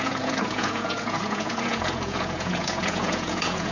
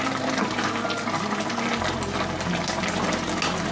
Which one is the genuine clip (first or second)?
second